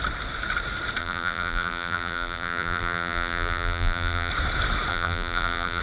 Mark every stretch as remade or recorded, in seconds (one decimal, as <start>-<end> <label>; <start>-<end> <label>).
0.0-1.0 recorded; 1.0-4.3 remade; 4.3-4.9 recorded; 4.9-5.8 remade